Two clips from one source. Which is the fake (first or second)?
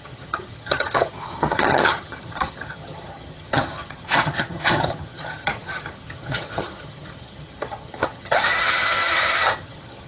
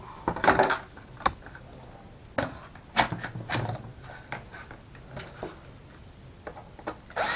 first